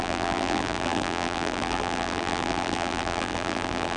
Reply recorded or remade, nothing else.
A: remade